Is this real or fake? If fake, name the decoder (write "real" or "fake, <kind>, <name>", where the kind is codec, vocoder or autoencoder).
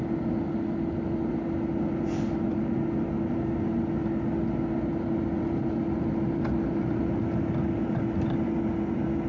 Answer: real